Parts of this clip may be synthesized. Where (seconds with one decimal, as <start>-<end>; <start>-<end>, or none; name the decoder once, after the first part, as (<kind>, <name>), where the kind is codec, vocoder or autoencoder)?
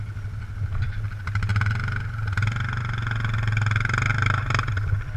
4.1-4.7 (vocoder, BigVGAN v2)